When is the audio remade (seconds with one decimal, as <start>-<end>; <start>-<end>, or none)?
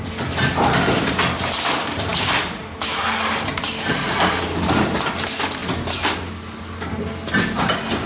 none